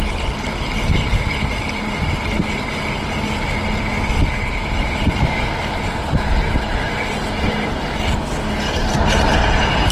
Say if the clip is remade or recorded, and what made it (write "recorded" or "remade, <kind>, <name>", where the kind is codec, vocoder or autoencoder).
recorded